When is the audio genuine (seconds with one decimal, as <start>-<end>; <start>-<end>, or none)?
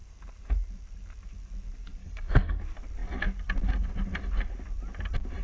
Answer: 0.0-2.0; 2.6-5.4